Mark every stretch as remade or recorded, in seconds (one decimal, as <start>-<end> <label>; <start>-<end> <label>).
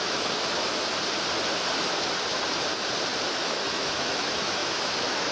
0.0-0.8 remade; 0.8-3.3 recorded; 3.3-5.3 remade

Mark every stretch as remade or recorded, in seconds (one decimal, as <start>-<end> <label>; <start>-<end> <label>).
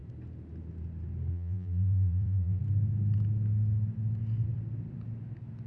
0.0-1.3 recorded; 1.3-2.6 remade; 2.6-5.7 recorded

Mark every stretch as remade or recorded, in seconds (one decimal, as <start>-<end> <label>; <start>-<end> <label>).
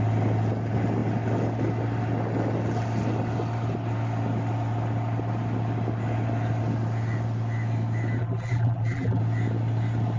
0.0-8.2 recorded; 8.2-9.2 remade; 9.2-10.2 recorded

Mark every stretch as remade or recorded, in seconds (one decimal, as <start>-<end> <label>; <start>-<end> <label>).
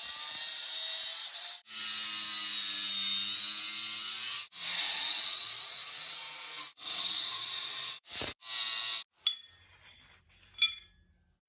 0.0-4.3 recorded; 4.3-8.3 remade; 8.3-11.5 recorded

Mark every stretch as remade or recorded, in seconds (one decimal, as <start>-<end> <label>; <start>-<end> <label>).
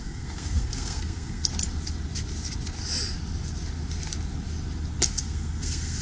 0.0-1.5 remade; 1.5-5.1 recorded; 5.1-6.0 remade